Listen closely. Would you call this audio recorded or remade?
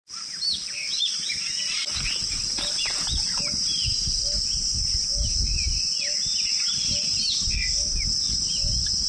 recorded